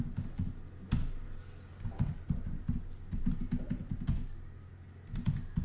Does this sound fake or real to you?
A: real